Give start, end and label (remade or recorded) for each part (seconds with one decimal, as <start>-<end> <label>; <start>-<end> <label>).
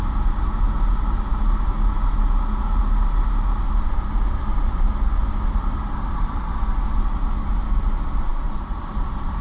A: 0.0-8.3 recorded; 8.3-8.8 remade; 8.8-9.4 recorded